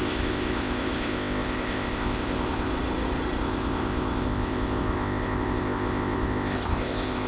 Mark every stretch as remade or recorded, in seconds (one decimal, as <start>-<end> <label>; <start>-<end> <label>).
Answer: 0.0-2.7 remade; 2.7-3.4 recorded; 3.4-7.3 remade